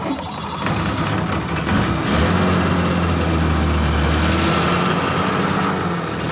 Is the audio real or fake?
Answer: real